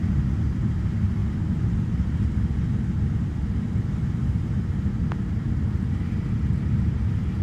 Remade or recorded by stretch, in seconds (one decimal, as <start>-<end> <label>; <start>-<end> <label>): 0.0-7.4 recorded